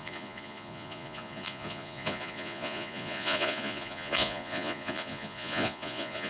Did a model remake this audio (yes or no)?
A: yes